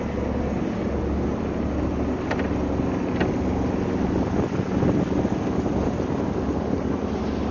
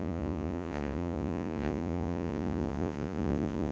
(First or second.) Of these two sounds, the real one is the first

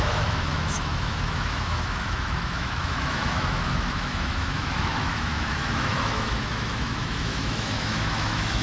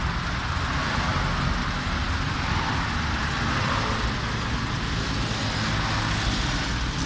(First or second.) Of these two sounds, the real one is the second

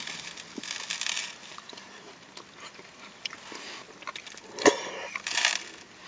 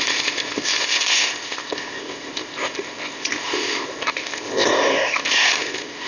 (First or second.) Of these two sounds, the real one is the first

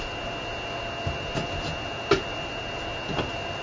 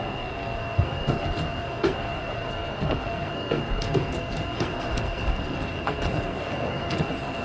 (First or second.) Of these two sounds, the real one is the first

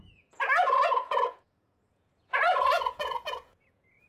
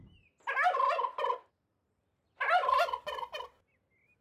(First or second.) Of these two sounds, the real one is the second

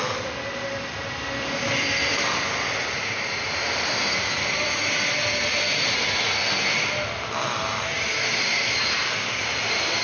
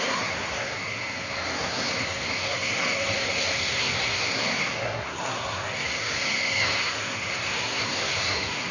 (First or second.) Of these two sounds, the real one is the first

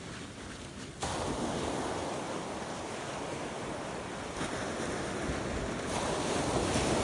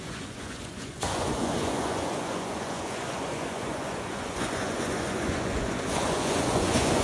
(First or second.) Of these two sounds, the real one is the first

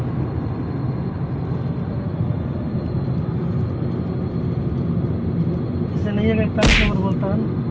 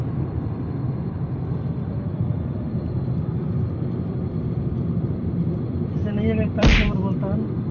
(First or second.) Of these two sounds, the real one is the first